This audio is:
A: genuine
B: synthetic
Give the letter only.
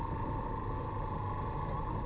A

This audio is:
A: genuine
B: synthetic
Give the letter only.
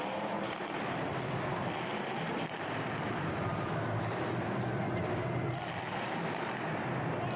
B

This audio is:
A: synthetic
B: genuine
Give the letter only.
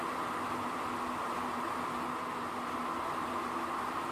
B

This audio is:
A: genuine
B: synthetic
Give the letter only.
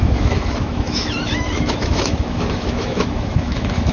B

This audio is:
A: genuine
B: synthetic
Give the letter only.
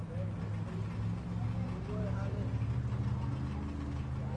A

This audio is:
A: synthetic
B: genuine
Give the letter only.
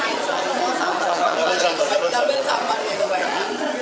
A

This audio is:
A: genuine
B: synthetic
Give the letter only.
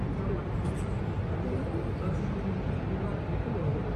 A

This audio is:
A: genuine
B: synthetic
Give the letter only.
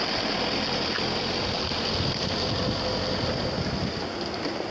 A